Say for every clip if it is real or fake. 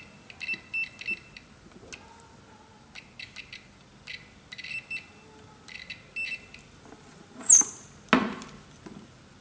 real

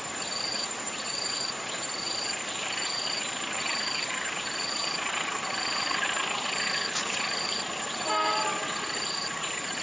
fake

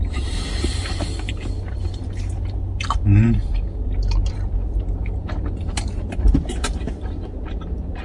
fake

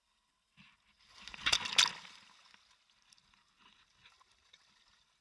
real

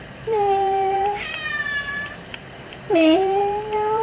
fake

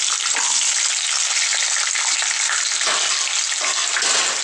real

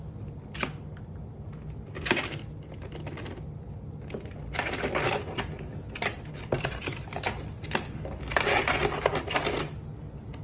real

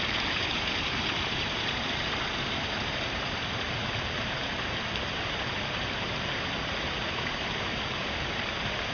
fake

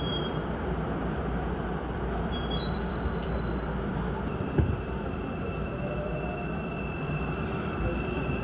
fake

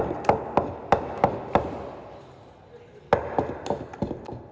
real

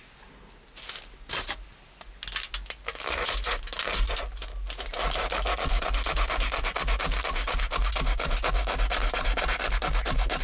real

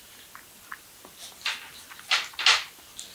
real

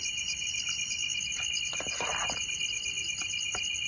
real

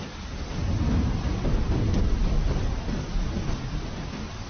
real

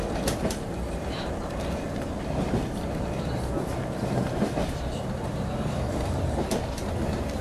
fake